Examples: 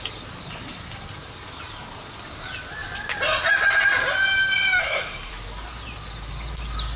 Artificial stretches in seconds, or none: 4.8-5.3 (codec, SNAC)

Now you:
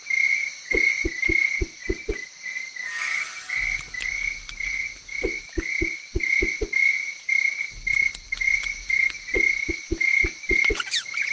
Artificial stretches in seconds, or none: none

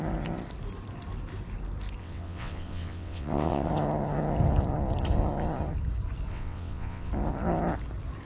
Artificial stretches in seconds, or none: 2.0-3.7 (vocoder, WaveNeXt); 6.3-7.1

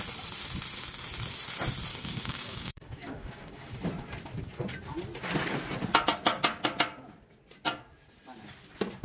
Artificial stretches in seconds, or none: 1.9-3.7 (codec, DAC)

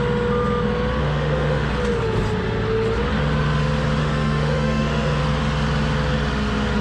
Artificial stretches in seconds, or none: 1.0-1.7 (autoencoder, DAC-VAE); 4.0-5.2

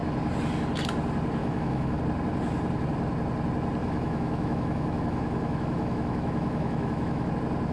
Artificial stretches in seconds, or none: 1.4-2.0 (autoencoder, DAC-VAE); 3.8-7.3